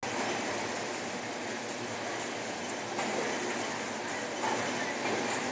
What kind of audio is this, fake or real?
real